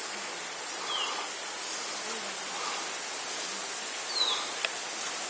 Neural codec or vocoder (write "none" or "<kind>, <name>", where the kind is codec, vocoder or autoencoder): none